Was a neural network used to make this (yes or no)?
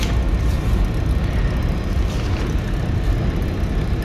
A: no